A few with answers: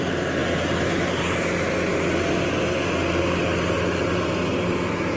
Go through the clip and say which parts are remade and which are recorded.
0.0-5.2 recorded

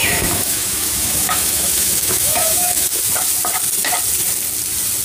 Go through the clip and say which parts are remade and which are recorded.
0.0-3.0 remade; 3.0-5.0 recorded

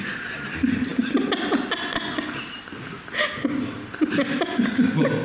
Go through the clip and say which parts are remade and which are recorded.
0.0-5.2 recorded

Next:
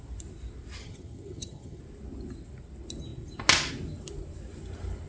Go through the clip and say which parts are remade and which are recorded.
0.0-0.8 recorded; 0.8-1.8 remade; 1.8-5.1 recorded

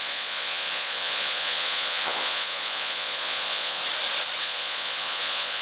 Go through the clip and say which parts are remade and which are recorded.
0.0-3.8 remade; 3.8-4.4 recorded; 4.4-5.6 remade

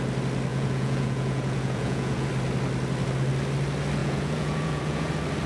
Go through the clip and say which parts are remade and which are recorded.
0.0-0.5 recorded; 0.5-2.3 remade; 2.3-4.0 recorded; 4.0-5.1 remade; 5.1-5.5 recorded

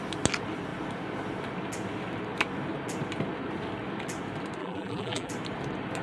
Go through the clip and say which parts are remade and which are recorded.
0.0-4.6 recorded; 4.6-5.3 remade; 5.3-6.0 recorded

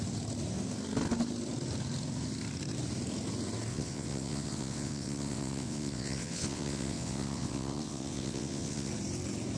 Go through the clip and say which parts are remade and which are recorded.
0.0-3.7 recorded; 3.7-8.9 remade; 8.9-9.6 recorded